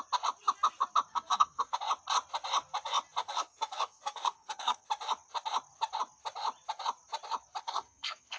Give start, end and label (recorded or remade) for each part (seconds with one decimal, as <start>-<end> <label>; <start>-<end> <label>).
0.0-1.1 recorded; 1.1-1.8 remade; 1.8-3.2 recorded; 3.2-4.9 remade; 4.9-7.6 recorded; 7.6-8.4 remade